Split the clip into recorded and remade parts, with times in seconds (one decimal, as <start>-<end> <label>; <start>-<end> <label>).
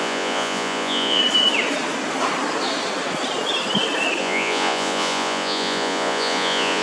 0.0-1.2 remade; 1.2-4.2 recorded; 4.2-6.8 remade